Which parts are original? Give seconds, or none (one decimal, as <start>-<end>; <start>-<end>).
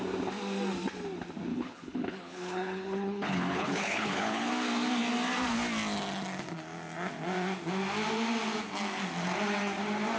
0.0-1.5; 4.5-10.2